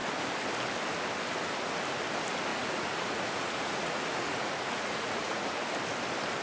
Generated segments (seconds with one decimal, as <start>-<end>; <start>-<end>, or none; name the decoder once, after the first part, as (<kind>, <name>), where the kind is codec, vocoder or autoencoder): 2.5-5.7 (vocoder, Vocos)